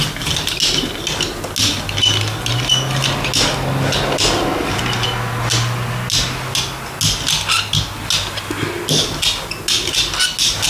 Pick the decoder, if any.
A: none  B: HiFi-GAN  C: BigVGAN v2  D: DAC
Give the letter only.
A